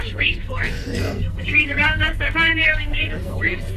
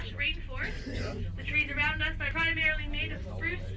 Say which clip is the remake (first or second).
first